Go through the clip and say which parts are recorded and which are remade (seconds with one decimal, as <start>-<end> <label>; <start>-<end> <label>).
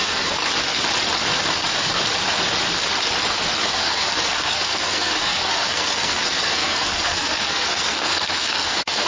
0.0-0.4 remade; 0.4-3.7 recorded; 3.7-9.1 remade